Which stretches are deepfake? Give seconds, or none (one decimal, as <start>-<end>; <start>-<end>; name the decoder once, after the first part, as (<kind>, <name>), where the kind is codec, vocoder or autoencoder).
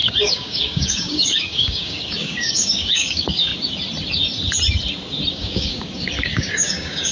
0.0-3.5 (codec, DAC); 5.3-7.1